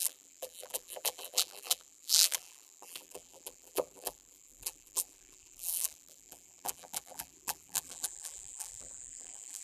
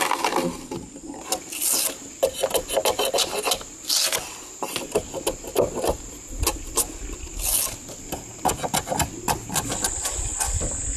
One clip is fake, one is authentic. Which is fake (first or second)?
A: first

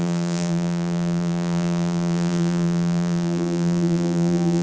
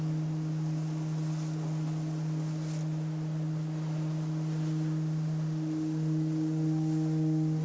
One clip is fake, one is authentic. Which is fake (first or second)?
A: first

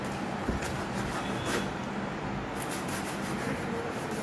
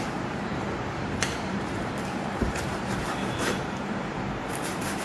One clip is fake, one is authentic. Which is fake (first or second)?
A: second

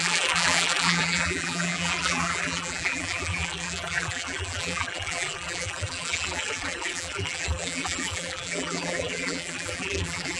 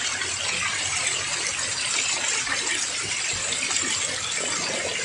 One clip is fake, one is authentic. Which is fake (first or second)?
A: first